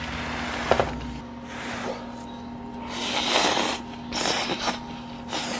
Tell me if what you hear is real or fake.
real